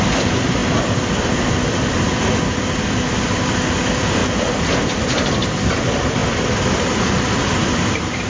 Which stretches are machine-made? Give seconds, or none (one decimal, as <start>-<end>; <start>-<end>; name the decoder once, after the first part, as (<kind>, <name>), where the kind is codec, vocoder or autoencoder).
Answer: 0.0-6.2 (vocoder, BigVGAN v2); 6.7-8.3